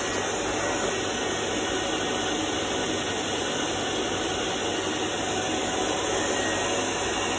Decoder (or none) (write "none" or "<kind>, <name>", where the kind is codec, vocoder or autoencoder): none